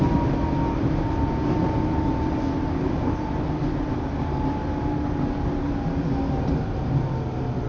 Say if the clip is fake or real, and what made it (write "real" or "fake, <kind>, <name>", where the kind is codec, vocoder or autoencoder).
real